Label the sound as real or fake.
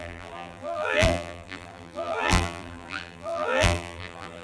fake